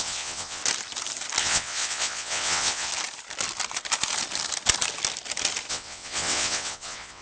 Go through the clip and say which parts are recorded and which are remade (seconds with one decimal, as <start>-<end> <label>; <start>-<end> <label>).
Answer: 0.0-0.6 remade; 0.6-1.4 recorded; 1.4-2.9 remade; 2.9-5.7 recorded; 5.7-7.2 remade